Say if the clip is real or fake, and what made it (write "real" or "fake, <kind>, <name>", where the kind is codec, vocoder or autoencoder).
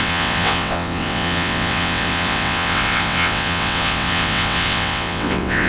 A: fake, vocoder, WaveNeXt